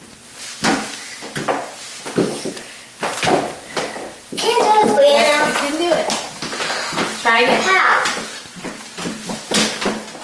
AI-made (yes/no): no